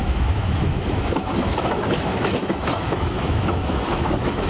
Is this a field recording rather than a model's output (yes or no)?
no